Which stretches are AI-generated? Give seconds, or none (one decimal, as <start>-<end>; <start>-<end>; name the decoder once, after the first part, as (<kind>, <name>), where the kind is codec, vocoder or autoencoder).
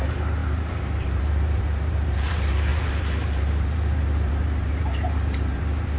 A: 0.0-6.0 (vocoder, BigVGAN v2)